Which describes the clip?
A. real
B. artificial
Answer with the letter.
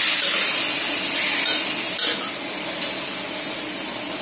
A